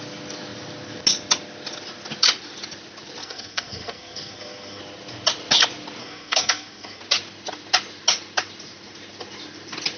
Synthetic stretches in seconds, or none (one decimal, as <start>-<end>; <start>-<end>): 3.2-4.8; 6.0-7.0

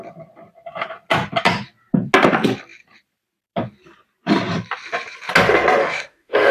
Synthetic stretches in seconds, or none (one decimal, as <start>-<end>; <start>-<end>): 5.8-6.5

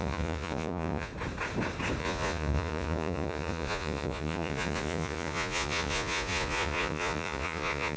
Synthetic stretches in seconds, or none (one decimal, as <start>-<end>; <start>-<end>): 0.0-1.1; 2.0-8.0